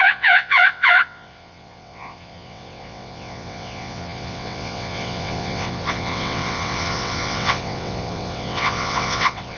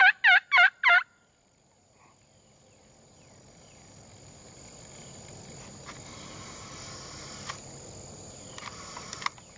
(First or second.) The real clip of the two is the second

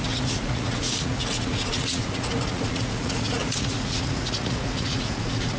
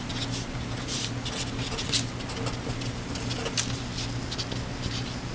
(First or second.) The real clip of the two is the second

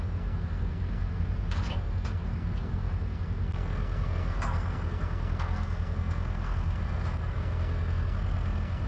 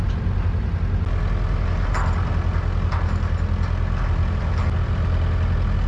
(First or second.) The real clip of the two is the second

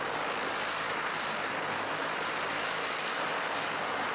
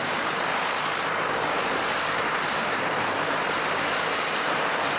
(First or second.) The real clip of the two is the first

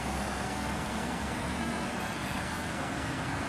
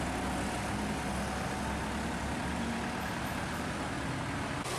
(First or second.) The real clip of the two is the second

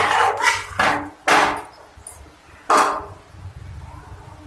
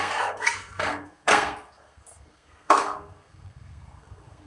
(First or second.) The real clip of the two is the first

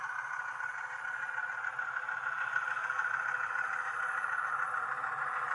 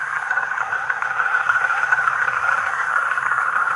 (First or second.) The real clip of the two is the first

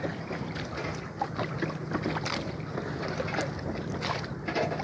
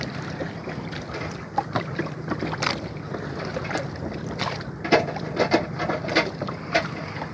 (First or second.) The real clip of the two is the first